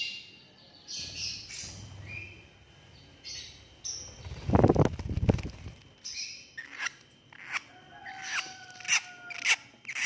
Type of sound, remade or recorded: recorded